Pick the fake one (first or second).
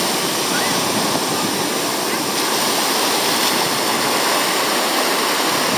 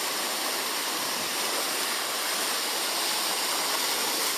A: second